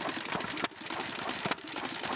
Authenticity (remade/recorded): recorded